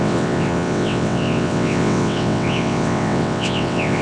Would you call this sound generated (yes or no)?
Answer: yes